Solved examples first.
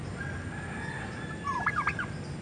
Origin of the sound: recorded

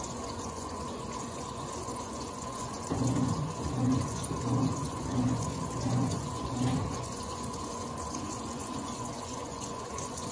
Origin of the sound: remade